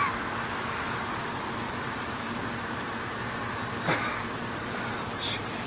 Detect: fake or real real